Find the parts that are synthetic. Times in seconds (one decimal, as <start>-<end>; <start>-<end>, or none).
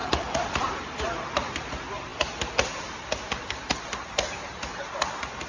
0.0-0.9